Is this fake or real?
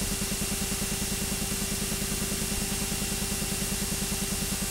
real